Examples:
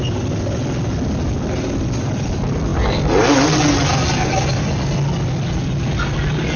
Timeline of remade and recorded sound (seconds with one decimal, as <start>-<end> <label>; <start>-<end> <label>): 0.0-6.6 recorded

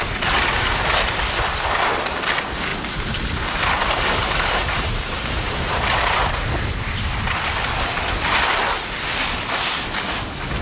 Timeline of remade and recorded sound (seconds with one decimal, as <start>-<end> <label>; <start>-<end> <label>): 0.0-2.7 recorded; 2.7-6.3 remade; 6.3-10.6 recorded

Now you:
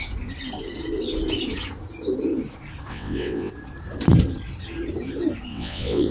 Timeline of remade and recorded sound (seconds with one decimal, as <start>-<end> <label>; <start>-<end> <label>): 0.0-2.9 recorded; 2.9-3.5 remade; 3.5-5.5 recorded; 5.5-6.1 remade

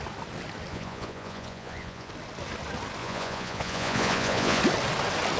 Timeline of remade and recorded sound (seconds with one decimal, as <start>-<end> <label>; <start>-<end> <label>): 0.0-0.7 recorded; 0.7-2.1 remade; 2.1-3.0 recorded; 3.0-4.6 remade; 4.6-5.4 recorded